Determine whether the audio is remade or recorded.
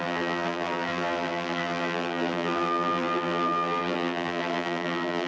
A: remade